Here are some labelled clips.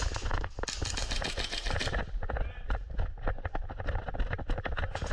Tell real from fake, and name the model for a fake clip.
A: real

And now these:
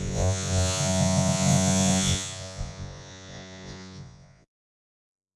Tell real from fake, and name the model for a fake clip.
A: fake, vocoder, Vocos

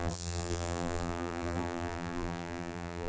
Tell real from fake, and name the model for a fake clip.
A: fake, vocoder, BigVGAN v2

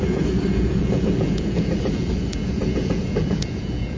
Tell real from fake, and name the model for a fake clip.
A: fake, vocoder, Vocos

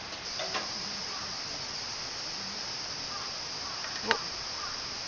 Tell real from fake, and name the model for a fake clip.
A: real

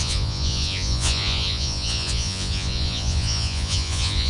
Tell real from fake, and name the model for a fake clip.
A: fake, vocoder, Vocos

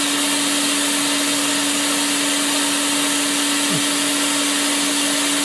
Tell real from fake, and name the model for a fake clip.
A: real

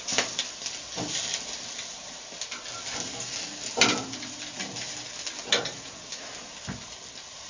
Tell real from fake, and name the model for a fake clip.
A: real